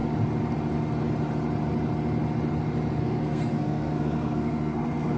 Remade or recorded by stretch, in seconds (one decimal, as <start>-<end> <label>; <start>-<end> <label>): 0.0-3.0 recorded; 3.0-5.2 remade